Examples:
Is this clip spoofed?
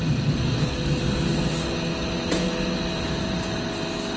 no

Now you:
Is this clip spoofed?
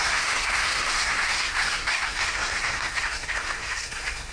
yes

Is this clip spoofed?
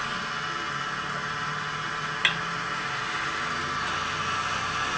no